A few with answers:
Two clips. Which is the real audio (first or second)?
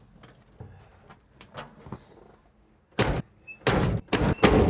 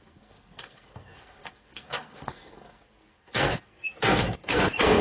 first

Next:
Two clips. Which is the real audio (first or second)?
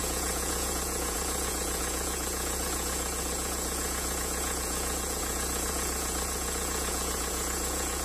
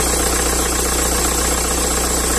second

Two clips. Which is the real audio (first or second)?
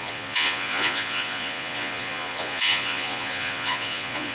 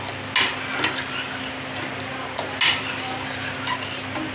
second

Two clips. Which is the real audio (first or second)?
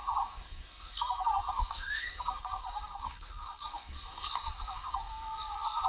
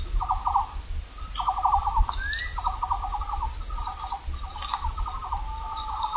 second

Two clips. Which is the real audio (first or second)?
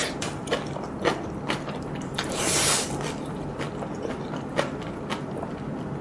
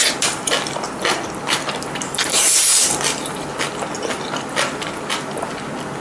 second